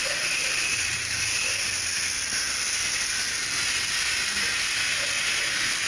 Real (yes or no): yes